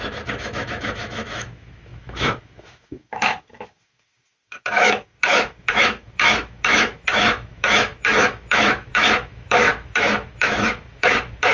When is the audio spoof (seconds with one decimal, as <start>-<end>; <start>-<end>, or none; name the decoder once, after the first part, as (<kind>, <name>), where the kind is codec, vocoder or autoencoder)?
0.0-11.5 (autoencoder, DAC-VAE)